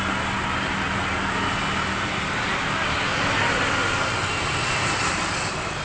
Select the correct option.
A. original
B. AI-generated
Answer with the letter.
A